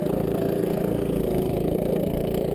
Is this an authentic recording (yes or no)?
no